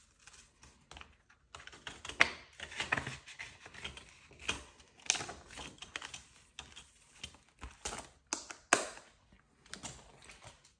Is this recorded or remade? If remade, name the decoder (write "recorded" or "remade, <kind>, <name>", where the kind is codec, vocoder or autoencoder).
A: recorded